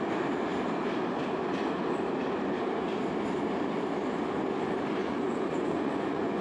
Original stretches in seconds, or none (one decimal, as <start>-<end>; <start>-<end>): 0.0-5.0